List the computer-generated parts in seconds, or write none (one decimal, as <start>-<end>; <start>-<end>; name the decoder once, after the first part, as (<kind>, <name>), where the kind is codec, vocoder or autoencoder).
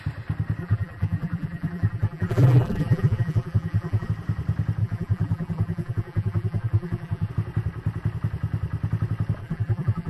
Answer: 0.6-4.1 (vocoder, BigVGAN v2); 4.8-7.3; 9.4-10.1